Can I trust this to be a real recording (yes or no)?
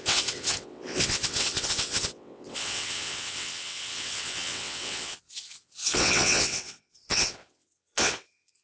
no